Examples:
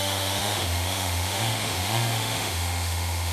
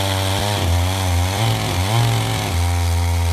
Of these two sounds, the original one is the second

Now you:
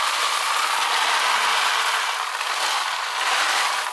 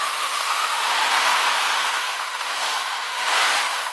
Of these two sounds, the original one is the first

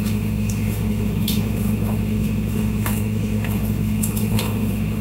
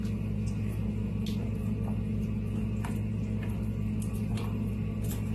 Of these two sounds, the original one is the second